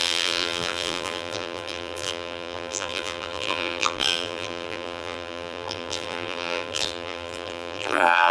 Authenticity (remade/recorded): remade